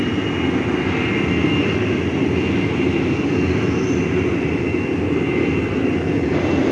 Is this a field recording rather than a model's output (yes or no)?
yes